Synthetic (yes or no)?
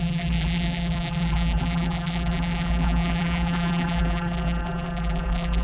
yes